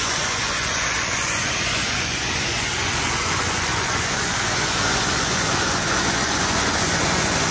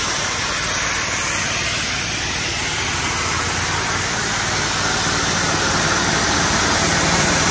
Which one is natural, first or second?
second